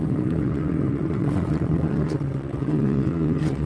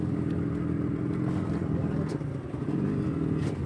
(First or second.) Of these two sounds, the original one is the second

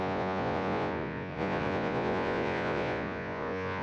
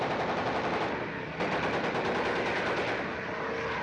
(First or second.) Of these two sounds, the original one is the second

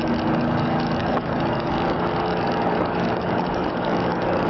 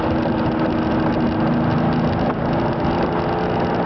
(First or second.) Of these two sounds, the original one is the second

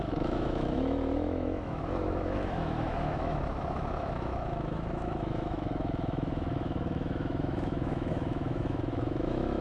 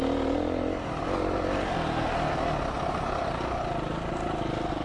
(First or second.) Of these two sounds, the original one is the second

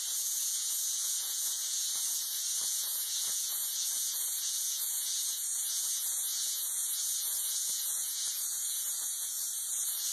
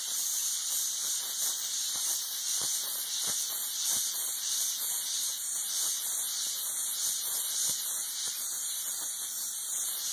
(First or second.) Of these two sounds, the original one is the second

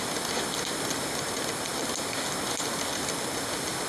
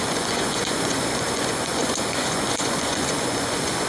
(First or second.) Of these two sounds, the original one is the first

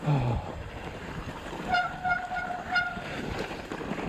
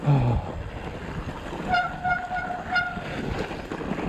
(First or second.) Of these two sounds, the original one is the second